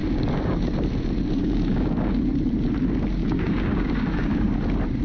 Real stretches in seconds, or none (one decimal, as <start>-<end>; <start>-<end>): 0.7-1.4; 2.2-3.2; 4.6-5.0